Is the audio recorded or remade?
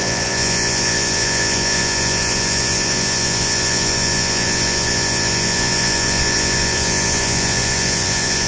remade